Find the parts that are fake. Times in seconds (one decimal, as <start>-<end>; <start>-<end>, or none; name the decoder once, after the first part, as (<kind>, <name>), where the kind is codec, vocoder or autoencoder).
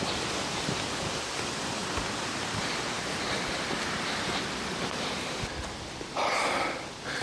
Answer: none